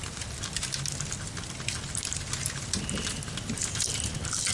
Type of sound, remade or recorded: recorded